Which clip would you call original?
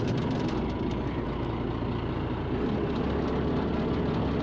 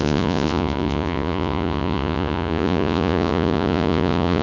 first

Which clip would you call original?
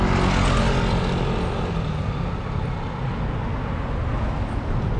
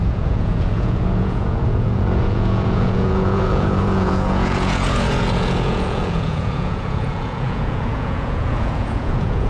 first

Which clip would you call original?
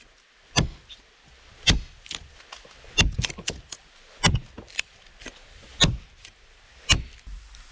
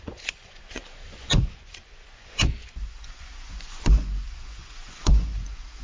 first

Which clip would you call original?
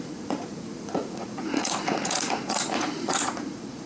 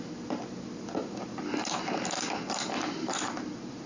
second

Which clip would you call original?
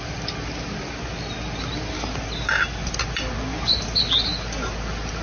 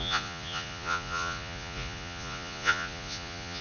first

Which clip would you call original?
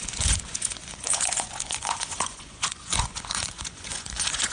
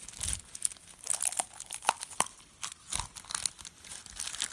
second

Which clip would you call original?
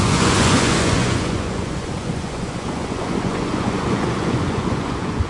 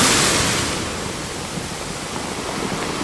second